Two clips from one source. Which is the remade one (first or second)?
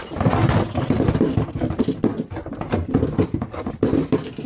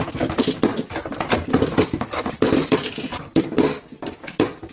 second